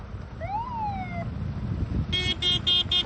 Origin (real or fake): real